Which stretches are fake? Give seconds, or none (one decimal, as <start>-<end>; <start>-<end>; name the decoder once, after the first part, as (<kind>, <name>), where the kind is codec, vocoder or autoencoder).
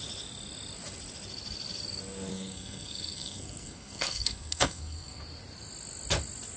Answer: 2.3-5.2 (codec, SNAC)